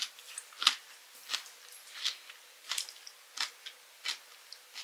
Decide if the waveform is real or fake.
real